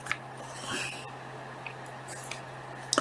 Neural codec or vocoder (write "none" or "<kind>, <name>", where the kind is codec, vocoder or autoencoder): none